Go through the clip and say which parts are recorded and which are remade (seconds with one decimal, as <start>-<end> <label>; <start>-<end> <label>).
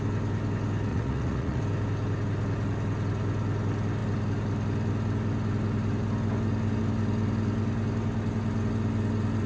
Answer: 0.0-0.9 recorded; 0.9-1.6 remade; 1.6-9.5 recorded